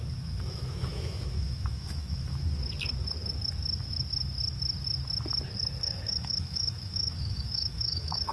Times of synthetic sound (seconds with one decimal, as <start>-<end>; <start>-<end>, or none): 0.0-2.4; 5.8-8.3

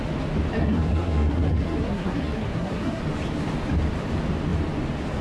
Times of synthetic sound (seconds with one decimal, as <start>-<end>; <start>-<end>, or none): 0.6-3.0

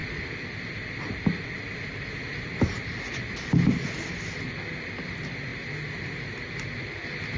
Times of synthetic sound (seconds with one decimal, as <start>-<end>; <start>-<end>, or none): none

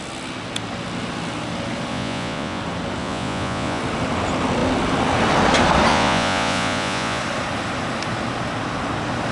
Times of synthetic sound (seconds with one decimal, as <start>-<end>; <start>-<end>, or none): 1.9-2.6; 3.0-3.8; 5.9-7.2